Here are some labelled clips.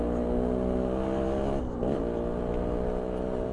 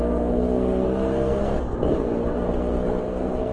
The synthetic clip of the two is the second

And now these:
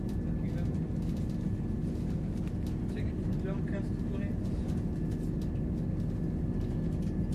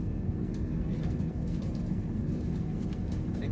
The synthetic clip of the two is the second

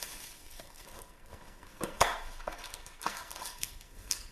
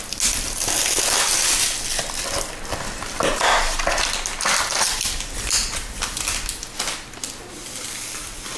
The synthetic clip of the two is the first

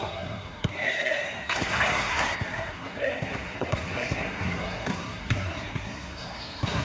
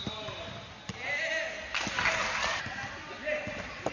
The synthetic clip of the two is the first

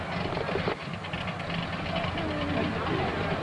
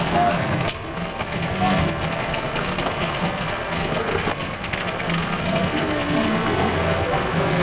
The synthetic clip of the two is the second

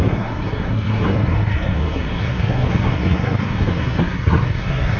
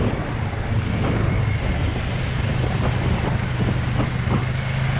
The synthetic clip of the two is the first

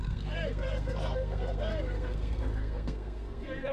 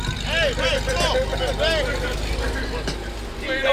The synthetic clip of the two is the first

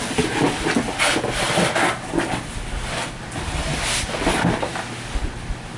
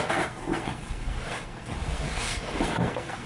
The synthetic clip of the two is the second